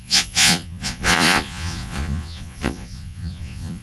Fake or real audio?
fake